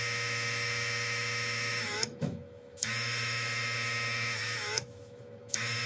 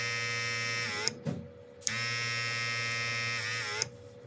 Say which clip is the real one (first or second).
second